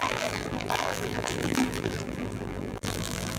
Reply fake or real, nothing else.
fake